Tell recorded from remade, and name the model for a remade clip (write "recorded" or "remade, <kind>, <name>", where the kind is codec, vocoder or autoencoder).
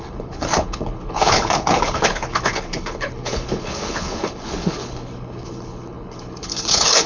remade, codec, HILCodec